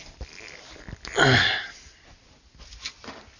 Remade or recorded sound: recorded